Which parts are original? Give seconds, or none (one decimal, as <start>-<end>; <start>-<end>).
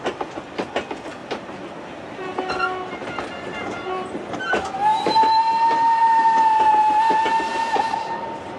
0.0-1.2; 4.4-4.9; 5.4-8.6